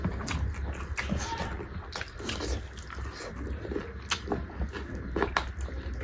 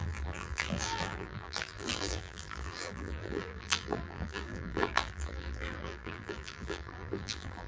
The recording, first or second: first